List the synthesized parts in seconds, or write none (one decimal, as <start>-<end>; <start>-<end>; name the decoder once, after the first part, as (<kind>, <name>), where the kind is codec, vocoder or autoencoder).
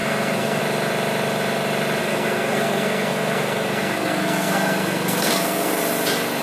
0.0-0.6 (codec, SNAC); 2.0-5.8